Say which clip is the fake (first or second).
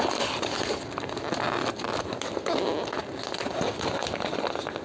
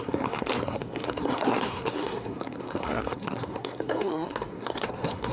second